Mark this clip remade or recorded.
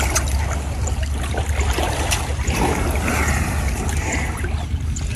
recorded